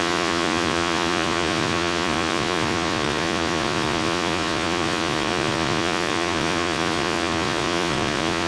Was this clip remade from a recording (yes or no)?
yes